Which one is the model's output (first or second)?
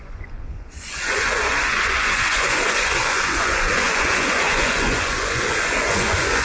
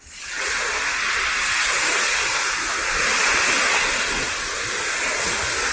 first